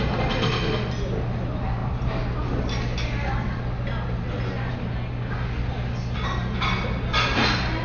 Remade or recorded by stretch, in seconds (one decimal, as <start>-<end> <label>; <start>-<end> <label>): 0.0-7.8 recorded